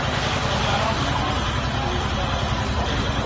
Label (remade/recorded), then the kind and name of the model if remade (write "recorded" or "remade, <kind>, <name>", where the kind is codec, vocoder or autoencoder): recorded